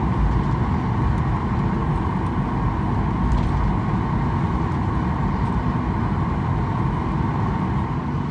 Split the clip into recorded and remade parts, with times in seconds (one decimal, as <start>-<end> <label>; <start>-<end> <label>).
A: 0.0-8.3 recorded